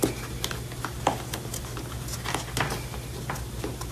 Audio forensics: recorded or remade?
recorded